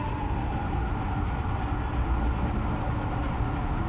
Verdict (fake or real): real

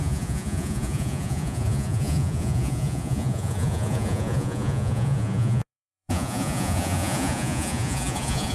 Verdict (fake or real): fake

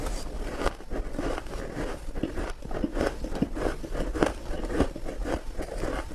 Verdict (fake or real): real